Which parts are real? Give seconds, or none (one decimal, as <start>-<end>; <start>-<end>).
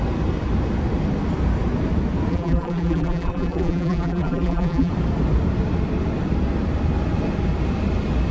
0.0-2.3; 4.9-8.3